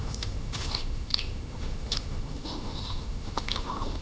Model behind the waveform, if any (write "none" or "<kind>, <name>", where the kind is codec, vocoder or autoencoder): autoencoder, DAC-VAE